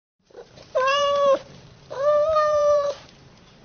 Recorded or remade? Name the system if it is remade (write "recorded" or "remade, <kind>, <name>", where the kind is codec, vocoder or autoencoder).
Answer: remade, vocoder, BigVGAN v2